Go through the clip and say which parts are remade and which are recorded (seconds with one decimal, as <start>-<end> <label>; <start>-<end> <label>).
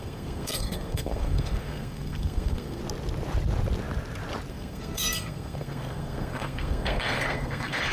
0.0-2.8 remade; 2.8-4.5 recorded; 4.5-7.9 remade